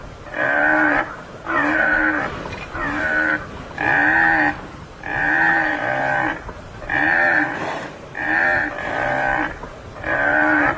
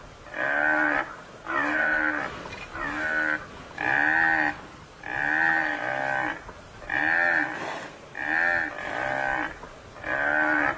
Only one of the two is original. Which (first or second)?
second